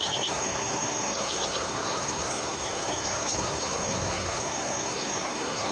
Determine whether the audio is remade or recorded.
remade